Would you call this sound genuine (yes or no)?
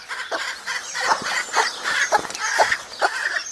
no